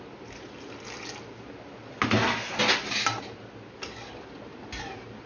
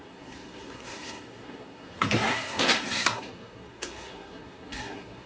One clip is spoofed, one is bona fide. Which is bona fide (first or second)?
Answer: first